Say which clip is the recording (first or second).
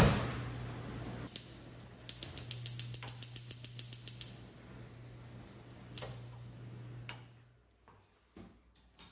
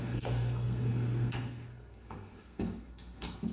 first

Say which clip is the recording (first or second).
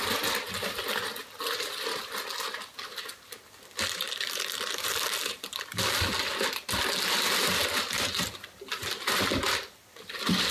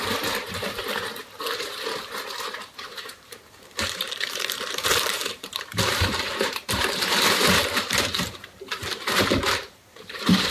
first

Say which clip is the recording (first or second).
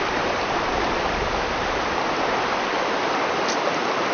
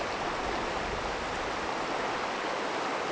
second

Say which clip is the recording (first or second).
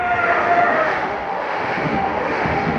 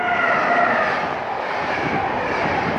second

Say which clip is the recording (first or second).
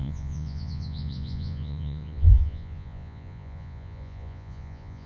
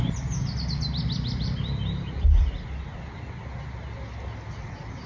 second